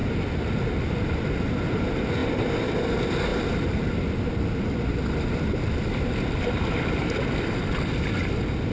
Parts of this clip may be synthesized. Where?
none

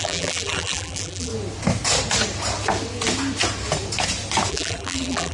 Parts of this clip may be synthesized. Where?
0.0-1.3 (vocoder, BigVGAN v2); 4.5-5.3